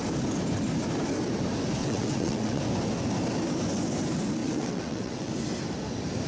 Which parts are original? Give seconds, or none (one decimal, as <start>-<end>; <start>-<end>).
0.0-1.8; 2.6-4.4; 5.3-6.3